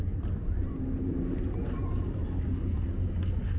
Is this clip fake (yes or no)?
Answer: no